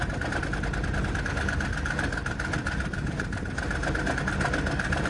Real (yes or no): yes